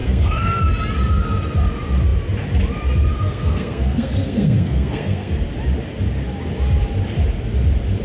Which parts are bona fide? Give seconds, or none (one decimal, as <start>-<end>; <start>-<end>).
0.6-3.1; 5.3-8.0